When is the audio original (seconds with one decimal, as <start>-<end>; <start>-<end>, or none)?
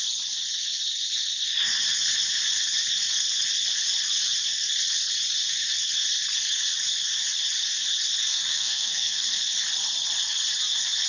0.0-8.5; 9.4-11.1